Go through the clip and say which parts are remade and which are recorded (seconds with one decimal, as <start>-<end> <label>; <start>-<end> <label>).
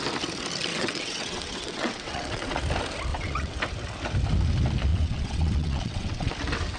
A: 0.0-0.7 recorded; 0.7-2.6 remade; 2.6-3.1 recorded; 3.1-3.6 remade; 3.6-4.9 recorded; 4.9-6.3 remade; 6.3-6.8 recorded